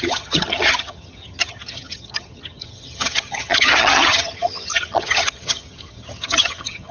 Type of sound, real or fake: fake